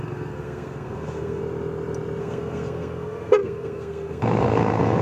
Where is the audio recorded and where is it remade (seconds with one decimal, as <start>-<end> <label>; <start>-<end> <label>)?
0.0-1.4 remade; 1.4-2.2 recorded; 2.2-5.0 remade